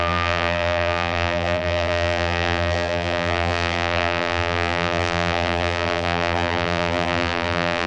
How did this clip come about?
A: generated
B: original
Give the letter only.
A